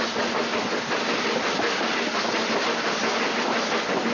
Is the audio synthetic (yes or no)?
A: no